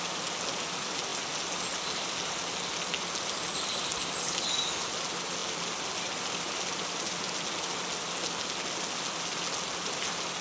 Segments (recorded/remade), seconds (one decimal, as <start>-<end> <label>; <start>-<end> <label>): 0.0-10.4 recorded